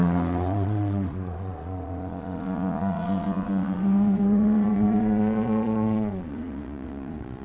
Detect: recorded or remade remade